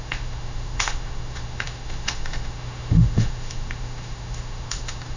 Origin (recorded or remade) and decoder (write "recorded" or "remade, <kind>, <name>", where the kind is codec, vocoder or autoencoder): remade, autoencoder, DAC-VAE